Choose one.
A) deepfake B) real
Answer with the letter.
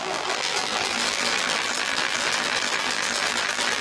A